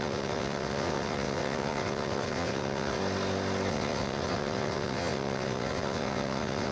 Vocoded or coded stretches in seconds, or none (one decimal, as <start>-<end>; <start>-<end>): 0.0-3.0; 3.7-6.7